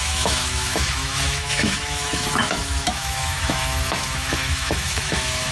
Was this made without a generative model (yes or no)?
no